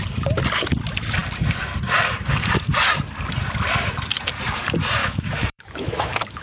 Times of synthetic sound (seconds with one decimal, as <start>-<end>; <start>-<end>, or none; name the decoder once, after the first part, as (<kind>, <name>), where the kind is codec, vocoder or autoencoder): 5.0-6.4 (autoencoder, DAC-VAE)